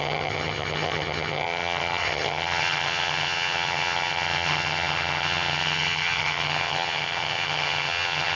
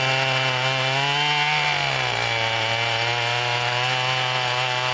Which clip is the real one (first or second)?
second